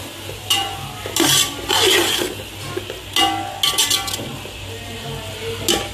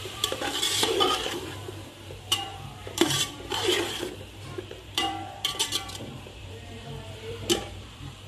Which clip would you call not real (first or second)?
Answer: second